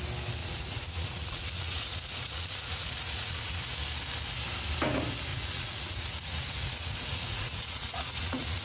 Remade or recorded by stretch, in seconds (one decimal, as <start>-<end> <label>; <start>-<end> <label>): 0.0-0.4 recorded; 0.4-3.6 remade; 3.6-5.3 recorded; 5.3-8.6 remade